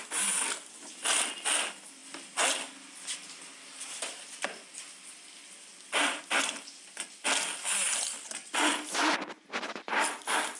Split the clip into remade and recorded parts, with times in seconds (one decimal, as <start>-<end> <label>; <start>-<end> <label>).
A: 0.0-10.6 recorded